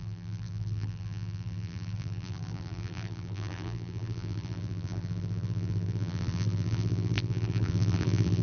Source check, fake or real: fake